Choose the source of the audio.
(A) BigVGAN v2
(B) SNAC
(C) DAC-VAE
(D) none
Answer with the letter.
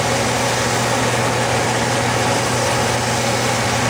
D